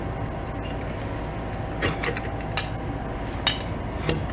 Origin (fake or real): real